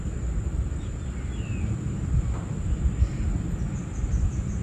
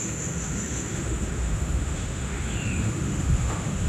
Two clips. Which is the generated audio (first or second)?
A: second